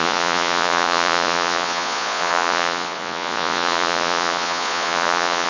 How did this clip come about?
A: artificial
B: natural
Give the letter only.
A